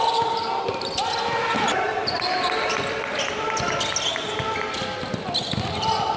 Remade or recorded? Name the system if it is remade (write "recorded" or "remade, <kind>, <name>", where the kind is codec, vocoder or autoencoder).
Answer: recorded